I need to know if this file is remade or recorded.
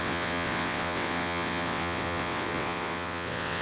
remade